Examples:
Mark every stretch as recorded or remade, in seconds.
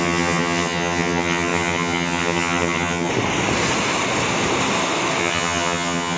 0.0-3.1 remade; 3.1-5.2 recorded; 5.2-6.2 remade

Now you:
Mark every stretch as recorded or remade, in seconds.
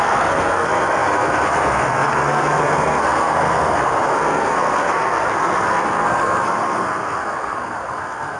0.0-8.4 remade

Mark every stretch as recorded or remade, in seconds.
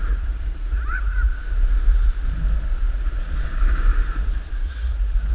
0.0-1.3 remade; 1.3-4.5 recorded; 4.5-5.3 remade